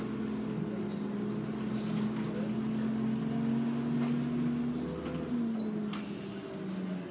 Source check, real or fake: real